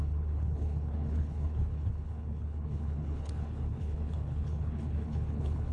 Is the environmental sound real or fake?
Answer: fake